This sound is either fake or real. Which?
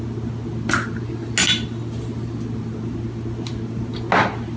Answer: real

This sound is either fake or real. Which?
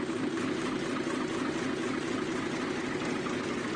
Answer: real